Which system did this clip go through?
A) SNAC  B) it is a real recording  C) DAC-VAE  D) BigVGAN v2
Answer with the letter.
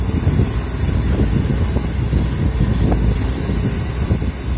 B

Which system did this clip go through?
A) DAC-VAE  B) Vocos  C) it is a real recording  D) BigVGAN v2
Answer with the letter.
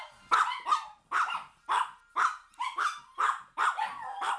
D